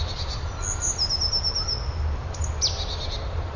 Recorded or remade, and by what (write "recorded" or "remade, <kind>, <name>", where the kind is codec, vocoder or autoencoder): recorded